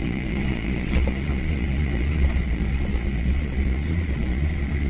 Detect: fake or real fake